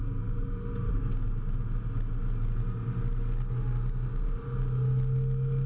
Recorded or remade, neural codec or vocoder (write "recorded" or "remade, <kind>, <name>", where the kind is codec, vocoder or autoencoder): recorded